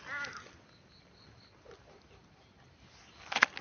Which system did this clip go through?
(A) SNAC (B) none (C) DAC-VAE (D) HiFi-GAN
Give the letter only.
B